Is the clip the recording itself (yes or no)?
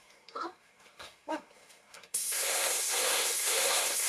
no